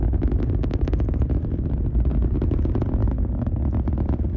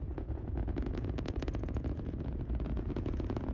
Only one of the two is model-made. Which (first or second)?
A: second